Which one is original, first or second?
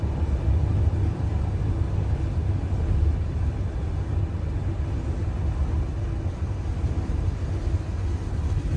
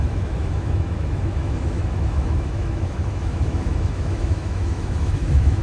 first